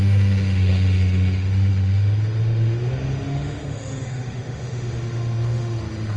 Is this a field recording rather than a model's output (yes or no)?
no